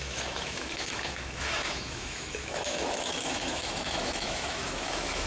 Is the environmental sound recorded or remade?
remade